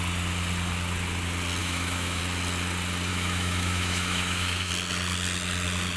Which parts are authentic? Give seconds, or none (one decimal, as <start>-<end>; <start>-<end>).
0.0-1.6; 2.2-3.1; 4.7-6.0